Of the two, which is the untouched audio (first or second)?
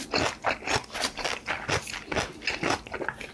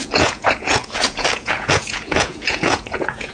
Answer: first